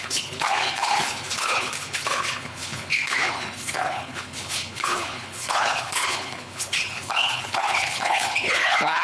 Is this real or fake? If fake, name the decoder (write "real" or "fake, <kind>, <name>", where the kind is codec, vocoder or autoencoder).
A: fake, codec, HILCodec